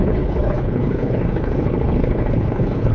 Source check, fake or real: fake